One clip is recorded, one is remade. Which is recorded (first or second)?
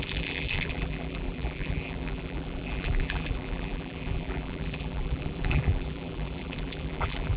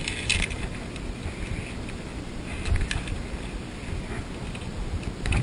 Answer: second